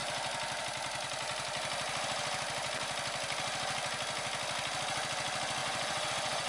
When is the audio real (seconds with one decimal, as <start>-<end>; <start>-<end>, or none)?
0.0-5.6